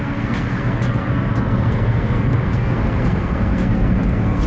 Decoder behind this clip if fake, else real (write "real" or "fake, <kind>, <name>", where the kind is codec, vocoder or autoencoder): fake, codec, SNAC